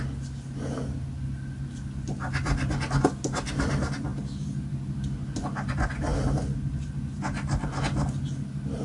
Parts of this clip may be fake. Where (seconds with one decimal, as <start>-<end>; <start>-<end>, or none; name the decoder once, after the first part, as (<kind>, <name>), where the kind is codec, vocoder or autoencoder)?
none